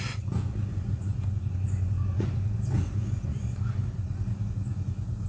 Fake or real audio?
fake